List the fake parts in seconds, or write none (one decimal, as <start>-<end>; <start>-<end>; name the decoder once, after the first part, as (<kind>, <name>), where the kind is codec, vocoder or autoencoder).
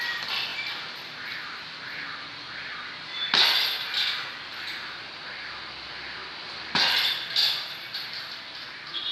7.4-8.2 (vocoder, BigVGAN v2)